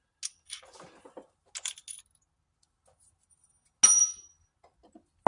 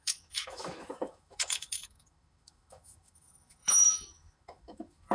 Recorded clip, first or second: first